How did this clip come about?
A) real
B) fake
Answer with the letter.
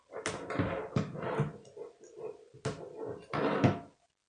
A